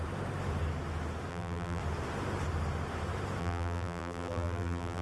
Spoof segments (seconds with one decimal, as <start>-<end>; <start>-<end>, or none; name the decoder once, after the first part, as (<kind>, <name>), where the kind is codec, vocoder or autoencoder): 1.3-1.8 (vocoder, BigVGAN v2); 3.4-5.0